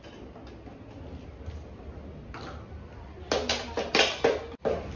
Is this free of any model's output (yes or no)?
yes